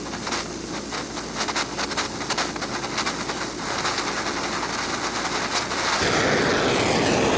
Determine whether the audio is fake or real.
real